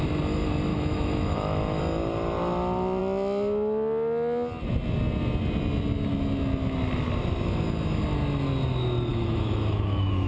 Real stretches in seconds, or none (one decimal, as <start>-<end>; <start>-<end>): 0.0-0.7; 1.8-9.1